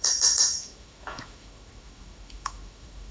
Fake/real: fake